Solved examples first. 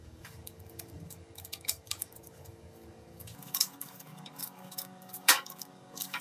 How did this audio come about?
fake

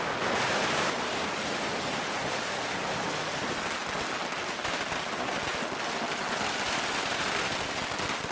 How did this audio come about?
real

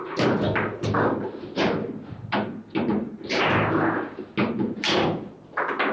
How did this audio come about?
real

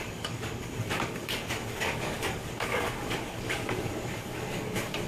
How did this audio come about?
fake